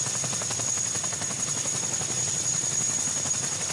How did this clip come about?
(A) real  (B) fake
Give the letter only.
A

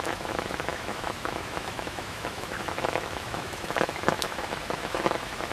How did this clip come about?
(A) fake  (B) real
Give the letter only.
A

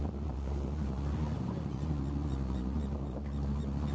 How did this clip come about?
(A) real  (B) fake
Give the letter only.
B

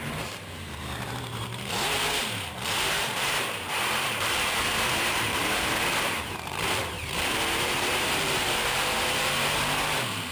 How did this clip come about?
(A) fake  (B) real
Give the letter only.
A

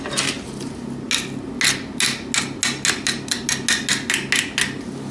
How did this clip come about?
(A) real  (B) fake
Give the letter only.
A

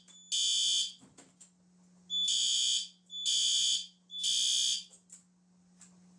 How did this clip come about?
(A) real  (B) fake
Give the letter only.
A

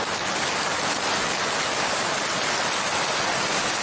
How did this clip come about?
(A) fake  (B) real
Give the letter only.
B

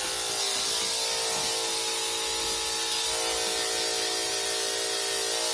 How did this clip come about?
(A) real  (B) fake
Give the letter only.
A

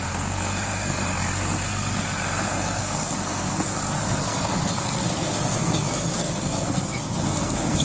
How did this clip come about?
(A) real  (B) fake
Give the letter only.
B